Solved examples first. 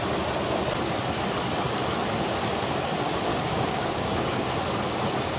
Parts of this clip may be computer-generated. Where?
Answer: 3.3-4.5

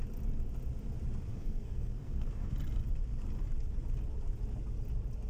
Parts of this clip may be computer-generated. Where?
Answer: 1.3-2.5

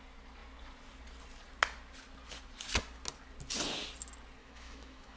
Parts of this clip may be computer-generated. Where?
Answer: 4.4-5.2

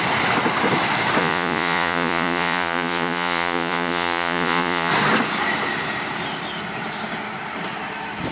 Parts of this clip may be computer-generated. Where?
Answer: 1.2-4.9

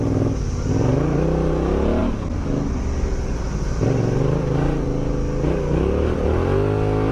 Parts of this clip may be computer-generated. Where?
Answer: none

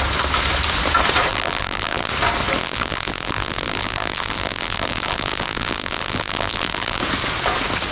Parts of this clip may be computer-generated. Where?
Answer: 1.3-2.1; 2.6-7.0